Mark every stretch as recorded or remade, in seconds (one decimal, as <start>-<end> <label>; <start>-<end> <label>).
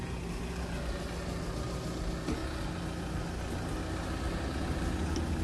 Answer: 0.0-5.4 recorded